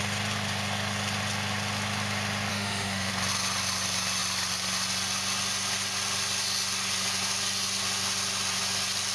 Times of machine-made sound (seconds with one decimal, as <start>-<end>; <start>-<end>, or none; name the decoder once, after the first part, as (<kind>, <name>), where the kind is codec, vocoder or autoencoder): 2.5-3.1 (autoencoder, DAC-VAE)